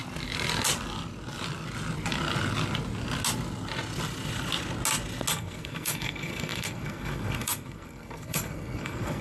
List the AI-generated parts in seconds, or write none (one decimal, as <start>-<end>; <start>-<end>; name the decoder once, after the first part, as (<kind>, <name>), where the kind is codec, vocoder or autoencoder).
5.3-9.2 (codec, SNAC)